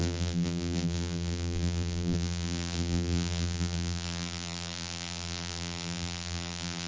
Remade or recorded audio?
remade